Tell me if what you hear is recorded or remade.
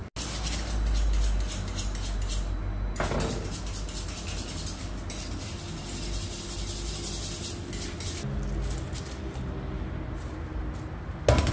recorded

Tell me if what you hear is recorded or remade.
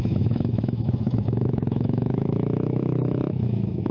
remade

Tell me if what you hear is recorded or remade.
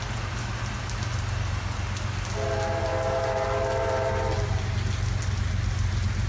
recorded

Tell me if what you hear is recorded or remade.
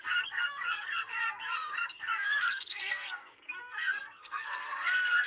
remade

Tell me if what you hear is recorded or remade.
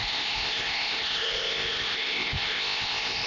remade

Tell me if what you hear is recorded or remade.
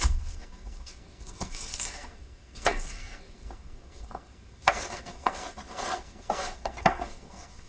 remade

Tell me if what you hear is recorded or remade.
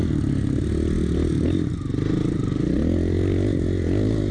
recorded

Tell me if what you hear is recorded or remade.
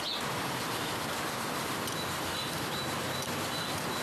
recorded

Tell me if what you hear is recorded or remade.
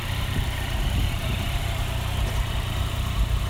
remade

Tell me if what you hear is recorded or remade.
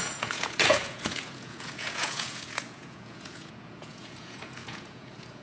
remade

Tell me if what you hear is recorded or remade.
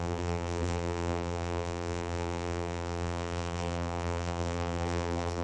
remade